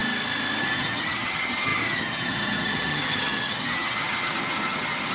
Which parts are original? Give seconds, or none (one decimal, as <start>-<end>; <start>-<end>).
0.0-0.6